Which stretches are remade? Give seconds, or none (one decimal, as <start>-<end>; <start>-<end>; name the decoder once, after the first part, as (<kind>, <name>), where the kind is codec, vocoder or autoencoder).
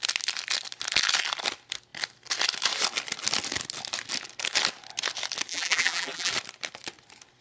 5.5-6.3 (vocoder, BigVGAN v2)